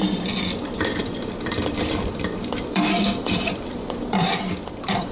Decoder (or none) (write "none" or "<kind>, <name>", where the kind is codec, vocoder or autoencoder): vocoder, BigVGAN v2